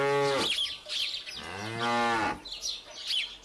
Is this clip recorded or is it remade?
recorded